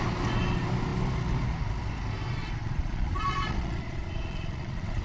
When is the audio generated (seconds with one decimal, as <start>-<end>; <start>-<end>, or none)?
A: 2.4-5.0